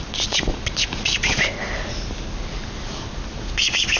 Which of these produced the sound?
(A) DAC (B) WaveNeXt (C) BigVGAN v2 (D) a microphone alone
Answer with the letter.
D